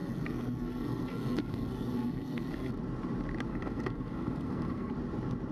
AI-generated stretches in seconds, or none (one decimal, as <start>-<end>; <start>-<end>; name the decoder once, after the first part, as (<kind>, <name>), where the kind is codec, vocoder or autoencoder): 0.0-2.7 (codec, SNAC); 3.5-4.9